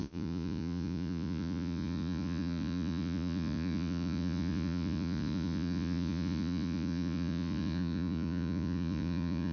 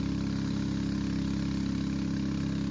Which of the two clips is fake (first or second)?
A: first